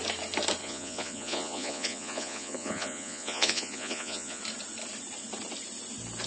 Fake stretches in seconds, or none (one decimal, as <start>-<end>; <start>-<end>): 0.6-4.4